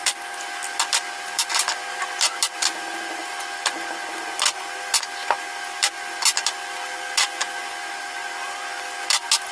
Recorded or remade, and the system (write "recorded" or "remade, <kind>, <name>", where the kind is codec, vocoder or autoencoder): recorded